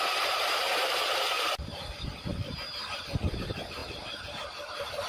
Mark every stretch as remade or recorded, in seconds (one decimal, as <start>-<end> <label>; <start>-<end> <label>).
0.0-5.1 recorded